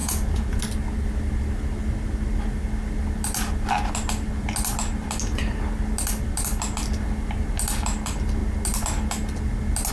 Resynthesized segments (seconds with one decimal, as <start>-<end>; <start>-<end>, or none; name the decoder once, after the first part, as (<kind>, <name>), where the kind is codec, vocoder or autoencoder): 0.0-0.6 (vocoder, Vocos)